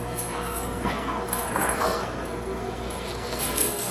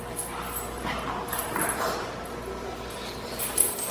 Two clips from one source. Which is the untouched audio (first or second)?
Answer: second